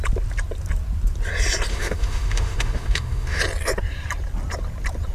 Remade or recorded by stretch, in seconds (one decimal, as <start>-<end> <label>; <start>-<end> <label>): 0.0-1.7 recorded; 1.7-3.4 remade; 3.4-5.1 recorded